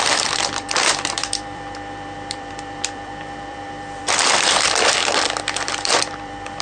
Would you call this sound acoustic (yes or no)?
no